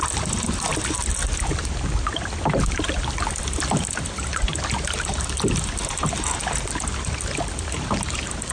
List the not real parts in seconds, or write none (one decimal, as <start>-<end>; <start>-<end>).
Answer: none